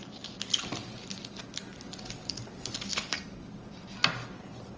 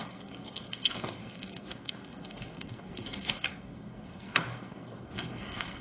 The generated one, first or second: second